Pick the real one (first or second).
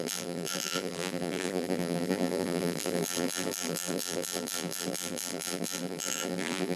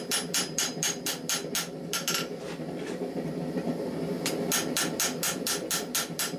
second